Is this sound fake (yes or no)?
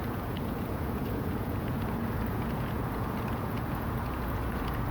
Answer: yes